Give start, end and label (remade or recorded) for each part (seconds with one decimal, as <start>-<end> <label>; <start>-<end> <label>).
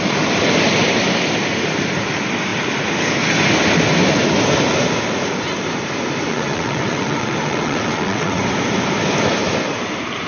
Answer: 0.0-6.3 recorded; 6.3-8.4 remade; 8.4-10.3 recorded